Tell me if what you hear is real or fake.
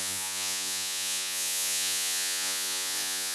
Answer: fake